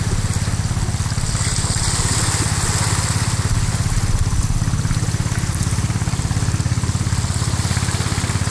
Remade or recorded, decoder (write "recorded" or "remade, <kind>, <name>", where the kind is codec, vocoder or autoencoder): recorded